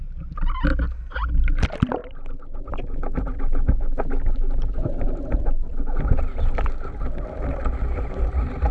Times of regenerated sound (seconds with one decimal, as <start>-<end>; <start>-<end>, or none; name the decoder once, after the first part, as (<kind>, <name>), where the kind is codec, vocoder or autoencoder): none